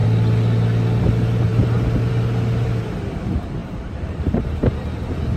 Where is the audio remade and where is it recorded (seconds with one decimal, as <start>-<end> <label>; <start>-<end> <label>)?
0.0-3.6 recorded; 3.6-5.4 remade